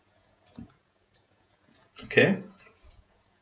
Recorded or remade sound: remade